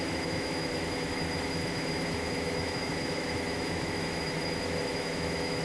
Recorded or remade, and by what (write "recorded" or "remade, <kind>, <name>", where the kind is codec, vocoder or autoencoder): remade, autoencoder, DAC-VAE